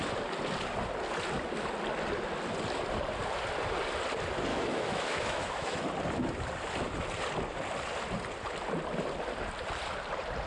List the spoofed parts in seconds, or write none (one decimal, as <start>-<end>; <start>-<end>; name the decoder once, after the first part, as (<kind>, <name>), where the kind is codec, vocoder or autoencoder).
4.5-5.8 (autoencoder, DAC-VAE)